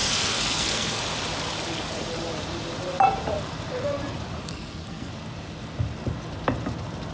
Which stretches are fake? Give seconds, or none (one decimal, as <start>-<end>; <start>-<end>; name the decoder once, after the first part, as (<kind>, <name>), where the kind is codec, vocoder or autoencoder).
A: 0.0-1.0 (codec, SNAC); 4.4-5.1